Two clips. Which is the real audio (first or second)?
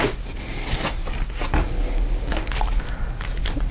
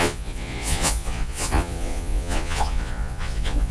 first